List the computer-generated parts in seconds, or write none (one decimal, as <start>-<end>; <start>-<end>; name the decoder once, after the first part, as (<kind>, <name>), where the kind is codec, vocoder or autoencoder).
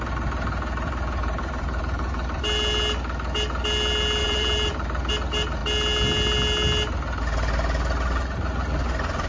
1.2-2.4 (vocoder, BigVGAN v2); 4.2-5.1